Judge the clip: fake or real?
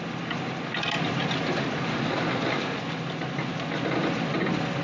real